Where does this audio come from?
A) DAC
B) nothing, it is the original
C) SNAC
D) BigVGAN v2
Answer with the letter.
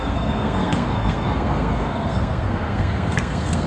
C